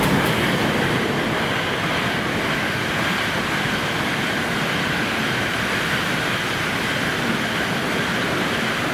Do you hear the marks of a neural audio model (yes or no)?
no